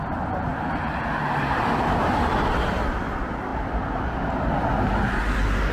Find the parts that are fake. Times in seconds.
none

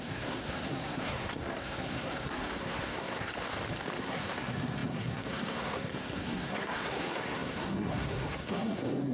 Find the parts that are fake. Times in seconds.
0.0-3.3 (codec, SNAC); 4.0-9.1

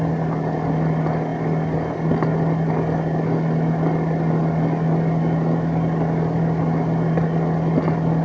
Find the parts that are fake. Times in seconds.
none